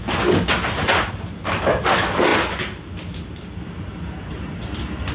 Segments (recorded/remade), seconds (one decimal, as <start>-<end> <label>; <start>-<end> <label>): 0.0-5.1 recorded